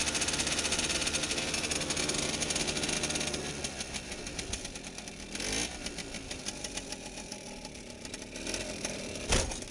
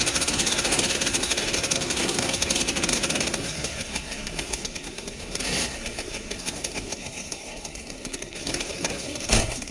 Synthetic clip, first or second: second